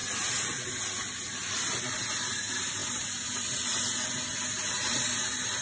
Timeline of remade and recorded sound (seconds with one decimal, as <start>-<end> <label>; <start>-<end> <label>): 0.0-5.6 remade